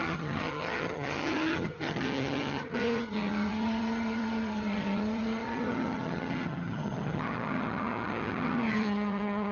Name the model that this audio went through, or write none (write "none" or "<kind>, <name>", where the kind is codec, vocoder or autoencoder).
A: vocoder, HiFi-GAN